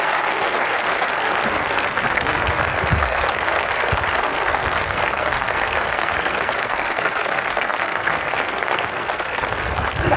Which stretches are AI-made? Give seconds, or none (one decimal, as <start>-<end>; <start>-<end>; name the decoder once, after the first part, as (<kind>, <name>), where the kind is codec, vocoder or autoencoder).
0.0-10.2 (codec, SNAC)